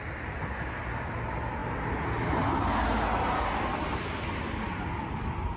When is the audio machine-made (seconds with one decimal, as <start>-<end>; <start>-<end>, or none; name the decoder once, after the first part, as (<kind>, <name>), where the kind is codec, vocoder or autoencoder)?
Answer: none